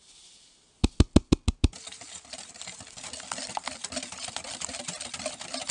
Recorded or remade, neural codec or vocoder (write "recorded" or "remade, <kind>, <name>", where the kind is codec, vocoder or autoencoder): recorded